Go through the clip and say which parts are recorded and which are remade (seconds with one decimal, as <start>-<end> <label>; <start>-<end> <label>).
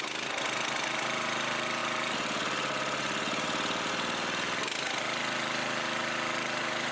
0.0-6.9 recorded